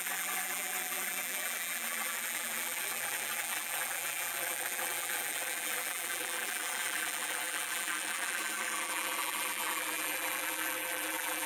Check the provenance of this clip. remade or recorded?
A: remade